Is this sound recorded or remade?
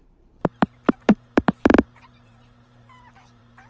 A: remade